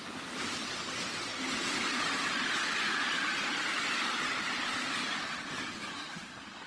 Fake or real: real